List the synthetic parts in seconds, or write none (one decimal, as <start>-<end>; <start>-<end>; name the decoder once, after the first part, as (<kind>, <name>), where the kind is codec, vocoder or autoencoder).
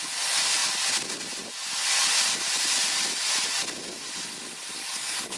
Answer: 4.8-5.4 (codec, DAC)